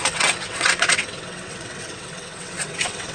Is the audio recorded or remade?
remade